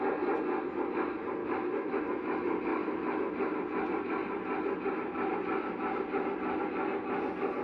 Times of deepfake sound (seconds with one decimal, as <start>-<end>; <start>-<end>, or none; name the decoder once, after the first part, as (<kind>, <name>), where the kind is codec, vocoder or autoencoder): 1.4-2.0 (autoencoder, DAC-VAE); 2.7-3.2